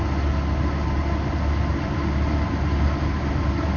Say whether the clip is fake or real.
real